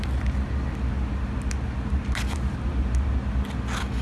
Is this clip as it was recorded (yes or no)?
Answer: yes